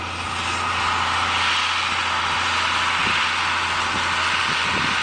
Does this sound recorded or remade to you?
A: recorded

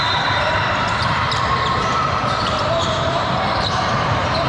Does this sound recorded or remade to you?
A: remade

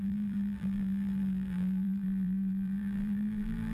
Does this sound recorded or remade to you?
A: remade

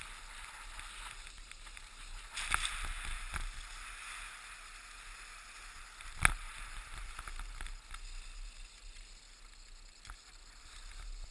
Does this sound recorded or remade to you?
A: recorded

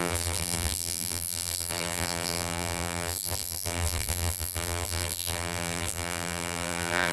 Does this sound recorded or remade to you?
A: remade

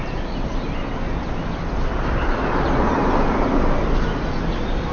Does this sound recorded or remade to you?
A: recorded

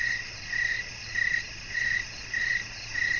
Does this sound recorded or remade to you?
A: recorded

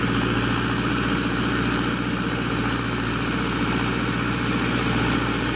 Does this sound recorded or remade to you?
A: recorded